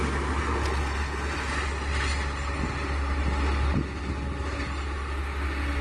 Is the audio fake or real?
real